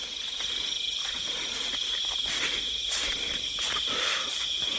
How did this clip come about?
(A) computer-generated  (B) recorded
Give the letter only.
B